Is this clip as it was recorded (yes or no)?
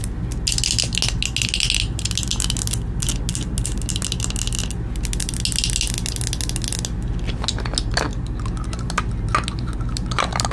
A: yes